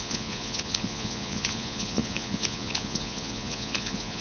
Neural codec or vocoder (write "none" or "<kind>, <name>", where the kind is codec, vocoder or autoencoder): vocoder, Vocos